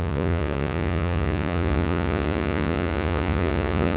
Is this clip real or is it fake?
fake